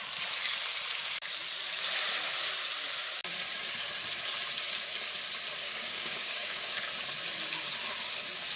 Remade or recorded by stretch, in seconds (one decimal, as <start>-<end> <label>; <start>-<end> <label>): 0.0-5.6 recorded; 5.6-6.9 remade; 6.9-8.6 recorded